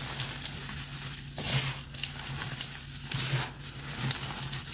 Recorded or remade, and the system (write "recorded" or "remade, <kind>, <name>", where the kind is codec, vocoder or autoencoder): recorded